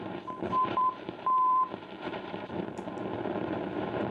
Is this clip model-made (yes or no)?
yes